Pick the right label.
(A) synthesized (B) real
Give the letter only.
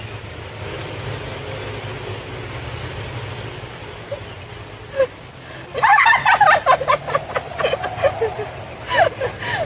B